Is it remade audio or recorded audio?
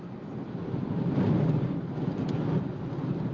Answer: recorded